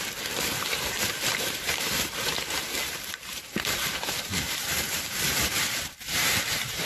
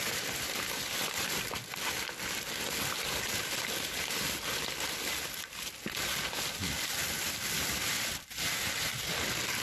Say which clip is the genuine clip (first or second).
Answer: second